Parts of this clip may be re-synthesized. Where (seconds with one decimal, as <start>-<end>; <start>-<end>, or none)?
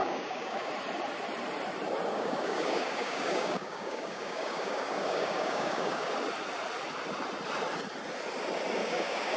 0.0-0.7; 2.1-6.1; 8.8-9.4